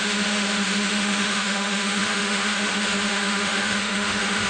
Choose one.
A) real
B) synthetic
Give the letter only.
B